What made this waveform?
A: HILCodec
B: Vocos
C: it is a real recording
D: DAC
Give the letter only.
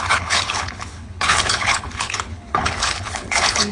A